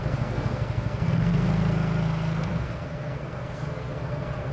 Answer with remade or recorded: remade